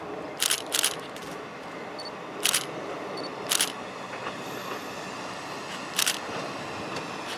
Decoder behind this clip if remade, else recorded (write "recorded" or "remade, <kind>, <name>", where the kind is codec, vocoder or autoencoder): recorded